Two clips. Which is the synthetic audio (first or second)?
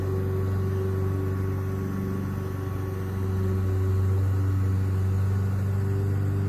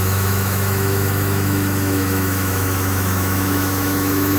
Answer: second